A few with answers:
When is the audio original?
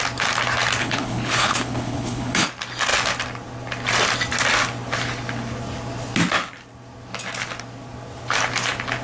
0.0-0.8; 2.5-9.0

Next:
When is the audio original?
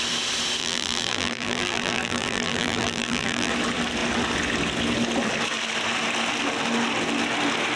0.0-0.6; 3.5-7.8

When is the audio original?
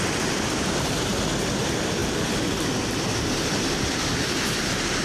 1.1-1.6; 2.0-4.5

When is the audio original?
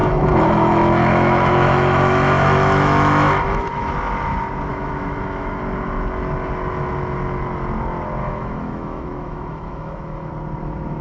3.9-4.7; 5.6-8.2; 10.3-11.0